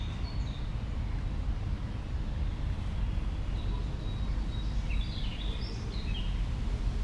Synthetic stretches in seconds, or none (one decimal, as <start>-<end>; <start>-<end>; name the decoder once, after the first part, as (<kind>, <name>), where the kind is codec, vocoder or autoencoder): none